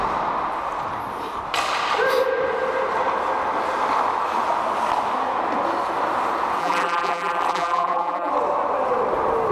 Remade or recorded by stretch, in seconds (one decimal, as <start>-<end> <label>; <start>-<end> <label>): 0.0-6.6 recorded; 6.6-8.3 remade; 8.3-9.5 recorded